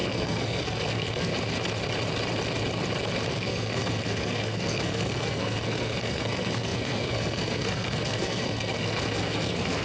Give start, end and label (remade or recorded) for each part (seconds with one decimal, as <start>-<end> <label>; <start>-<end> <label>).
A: 0.0-1.3 remade; 1.3-3.3 recorded; 3.3-9.8 remade